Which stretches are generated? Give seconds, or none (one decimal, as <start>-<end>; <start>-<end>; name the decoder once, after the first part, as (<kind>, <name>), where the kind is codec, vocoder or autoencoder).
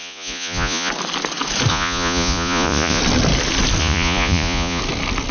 0.0-0.9 (vocoder, Vocos); 1.7-3.0; 3.8-4.8